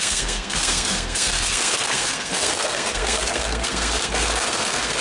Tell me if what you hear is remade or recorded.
remade